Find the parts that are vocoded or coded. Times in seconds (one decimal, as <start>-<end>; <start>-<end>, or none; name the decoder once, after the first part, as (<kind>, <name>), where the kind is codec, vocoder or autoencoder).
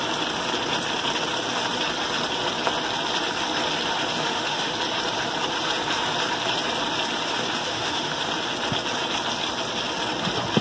4.2-4.7 (autoencoder, DAC-VAE); 7.6-8.2